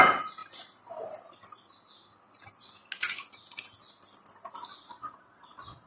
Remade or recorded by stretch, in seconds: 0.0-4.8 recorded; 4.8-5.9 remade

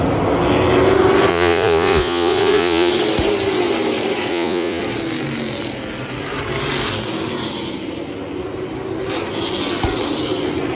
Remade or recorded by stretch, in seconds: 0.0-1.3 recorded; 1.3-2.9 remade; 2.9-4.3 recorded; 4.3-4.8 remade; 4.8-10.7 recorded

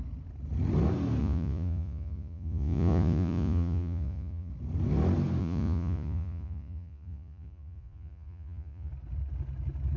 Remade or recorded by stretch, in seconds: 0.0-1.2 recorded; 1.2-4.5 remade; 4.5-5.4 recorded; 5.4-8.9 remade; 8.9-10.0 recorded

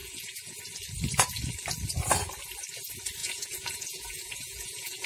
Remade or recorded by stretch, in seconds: 0.0-0.6 remade; 0.6-3.2 recorded; 3.2-5.1 remade

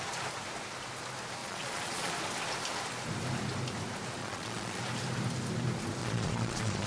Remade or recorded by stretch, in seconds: 0.0-1.4 recorded; 1.4-2.1 remade; 2.1-4.2 recorded; 4.2-4.8 remade; 4.8-6.0 recorded; 6.0-6.9 remade

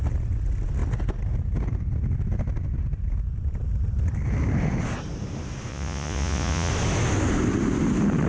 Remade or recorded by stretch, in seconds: 0.0-5.7 recorded; 5.7-6.7 remade; 6.7-8.3 recorded